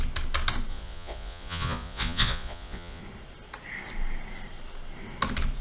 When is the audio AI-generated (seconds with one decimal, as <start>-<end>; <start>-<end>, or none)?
0.7-3.0